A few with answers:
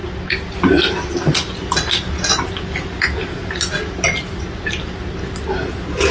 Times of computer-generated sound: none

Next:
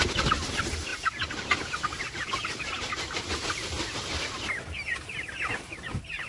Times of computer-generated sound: none

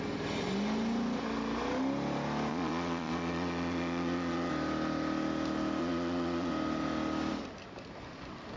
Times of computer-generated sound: 2.5-4.5 (vocoder, Vocos); 5.8-6.5

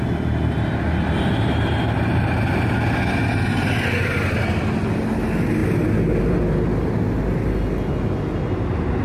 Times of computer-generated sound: none